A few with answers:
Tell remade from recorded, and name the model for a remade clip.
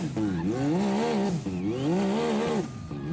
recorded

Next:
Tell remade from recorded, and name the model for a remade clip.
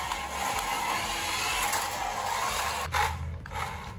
recorded